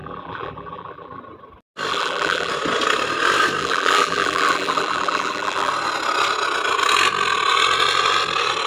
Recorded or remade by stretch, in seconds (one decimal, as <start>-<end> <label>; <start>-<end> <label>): 0.0-1.2 remade; 1.2-1.9 recorded; 1.9-2.5 remade; 2.5-3.6 recorded; 3.6-5.7 remade; 5.7-8.7 recorded